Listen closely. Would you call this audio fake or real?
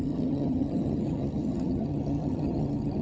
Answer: fake